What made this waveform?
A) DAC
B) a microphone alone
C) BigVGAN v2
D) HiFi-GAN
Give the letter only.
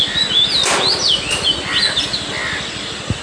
B